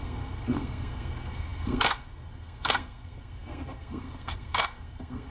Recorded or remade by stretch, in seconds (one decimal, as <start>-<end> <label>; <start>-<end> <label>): 0.0-5.3 remade